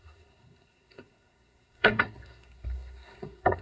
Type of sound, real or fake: fake